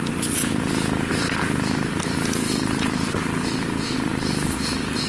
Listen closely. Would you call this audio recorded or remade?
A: recorded